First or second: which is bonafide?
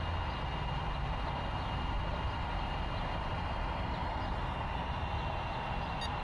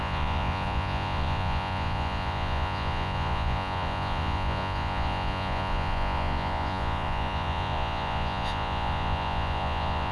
first